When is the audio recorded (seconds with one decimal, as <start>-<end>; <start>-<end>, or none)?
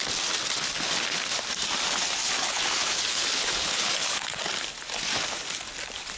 0.0-2.2; 4.4-6.2